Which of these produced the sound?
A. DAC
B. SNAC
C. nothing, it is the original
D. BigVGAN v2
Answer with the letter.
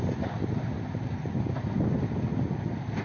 C